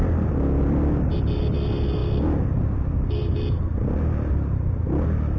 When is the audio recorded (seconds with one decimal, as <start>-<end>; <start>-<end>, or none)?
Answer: 0.0-5.4